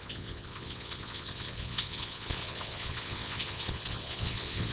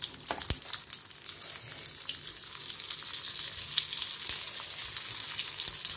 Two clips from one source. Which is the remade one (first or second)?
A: first